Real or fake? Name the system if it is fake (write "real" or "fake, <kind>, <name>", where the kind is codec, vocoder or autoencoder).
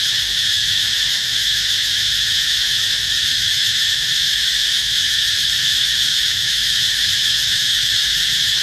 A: fake, autoencoder, DAC-VAE